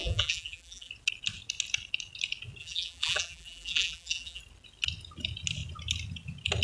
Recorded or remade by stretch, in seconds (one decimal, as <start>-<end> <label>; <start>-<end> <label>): 0.0-0.9 remade; 0.9-2.6 recorded; 2.6-4.4 remade; 4.4-6.6 recorded